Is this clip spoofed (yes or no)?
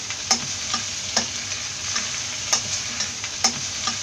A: no